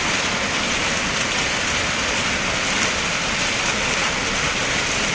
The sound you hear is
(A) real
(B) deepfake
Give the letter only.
A